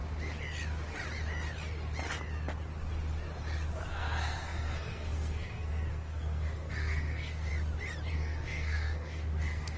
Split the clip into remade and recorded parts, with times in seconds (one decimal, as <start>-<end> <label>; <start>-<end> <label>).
0.0-3.9 recorded; 3.9-7.5 remade; 7.5-8.1 recorded; 8.1-9.8 remade